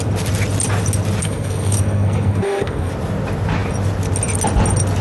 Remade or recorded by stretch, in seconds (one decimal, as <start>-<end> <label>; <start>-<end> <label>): 0.0-1.2 recorded; 1.2-2.9 remade; 2.9-5.0 recorded